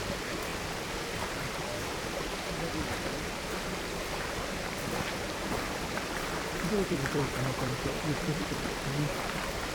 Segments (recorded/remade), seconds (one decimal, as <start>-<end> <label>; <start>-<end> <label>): 0.0-5.4 recorded; 5.4-8.6 remade; 8.6-9.7 recorded